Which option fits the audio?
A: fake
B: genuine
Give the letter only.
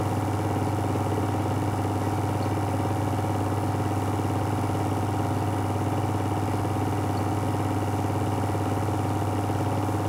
B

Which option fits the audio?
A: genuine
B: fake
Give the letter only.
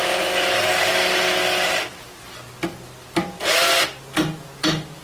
A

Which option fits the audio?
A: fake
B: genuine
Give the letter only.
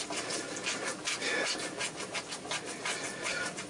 B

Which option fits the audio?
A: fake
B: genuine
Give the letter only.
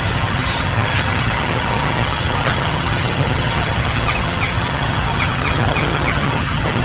A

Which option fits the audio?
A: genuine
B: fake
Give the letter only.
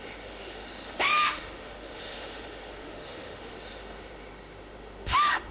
B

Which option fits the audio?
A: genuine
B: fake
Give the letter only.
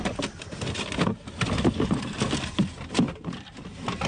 A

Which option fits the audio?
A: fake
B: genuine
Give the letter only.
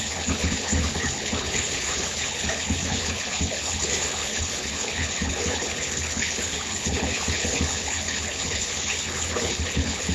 A